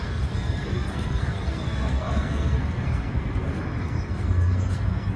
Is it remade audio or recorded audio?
remade